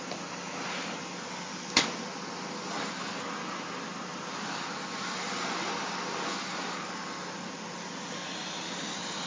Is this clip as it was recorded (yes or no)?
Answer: yes